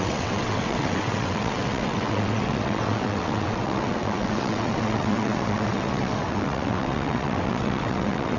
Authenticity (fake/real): fake